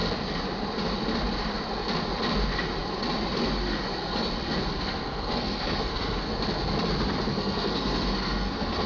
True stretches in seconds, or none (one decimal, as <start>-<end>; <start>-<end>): 0.0-4.6; 6.3-7.3